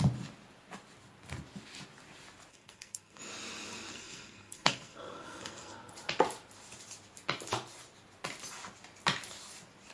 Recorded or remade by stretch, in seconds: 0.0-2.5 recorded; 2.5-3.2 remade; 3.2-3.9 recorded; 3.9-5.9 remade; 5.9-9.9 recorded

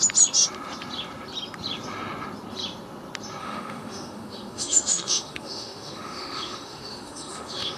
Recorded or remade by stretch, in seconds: 0.0-3.4 recorded; 3.4-7.8 remade

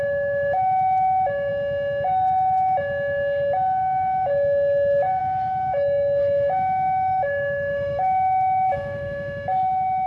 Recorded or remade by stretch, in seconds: 0.0-1.5 remade; 1.5-5.2 recorded; 5.2-10.1 remade

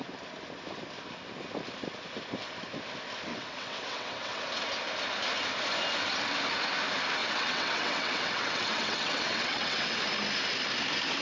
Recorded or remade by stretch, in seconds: 0.0-3.3 recorded; 3.3-4.4 remade; 4.4-7.2 recorded; 7.2-10.0 remade; 10.0-11.2 recorded